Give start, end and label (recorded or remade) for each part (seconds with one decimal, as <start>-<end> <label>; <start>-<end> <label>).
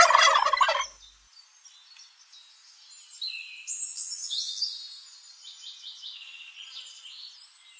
0.0-3.9 recorded; 3.9-4.6 remade; 4.6-7.8 recorded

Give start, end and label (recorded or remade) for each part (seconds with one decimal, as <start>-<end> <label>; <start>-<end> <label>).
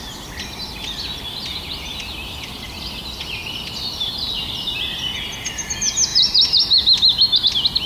0.0-6.1 recorded; 6.1-7.2 remade; 7.2-7.9 recorded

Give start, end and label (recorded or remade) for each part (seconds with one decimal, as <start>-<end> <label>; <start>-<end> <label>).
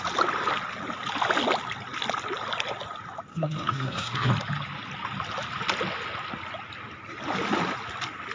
0.0-3.3 recorded; 3.3-4.3 remade; 4.3-8.3 recorded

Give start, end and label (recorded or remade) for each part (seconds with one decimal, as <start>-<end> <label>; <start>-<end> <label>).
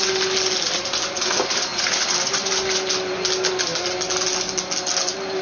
0.0-5.4 recorded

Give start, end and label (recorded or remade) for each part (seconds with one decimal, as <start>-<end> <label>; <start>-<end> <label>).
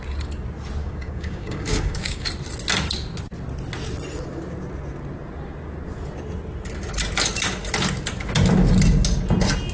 0.0-0.8 recorded; 0.8-2.3 remade; 2.3-9.7 recorded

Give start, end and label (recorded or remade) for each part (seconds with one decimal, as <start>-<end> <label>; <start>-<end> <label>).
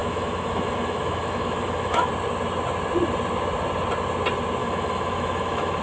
0.0-2.1 remade; 2.1-4.6 recorded; 4.6-5.8 remade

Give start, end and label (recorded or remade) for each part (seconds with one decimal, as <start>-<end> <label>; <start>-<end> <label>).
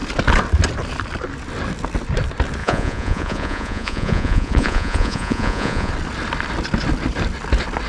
0.0-2.6 recorded; 2.6-5.9 remade; 5.9-7.9 recorded